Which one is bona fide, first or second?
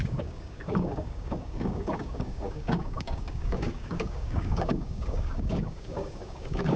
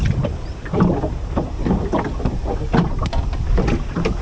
second